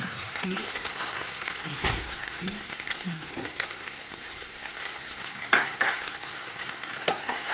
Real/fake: fake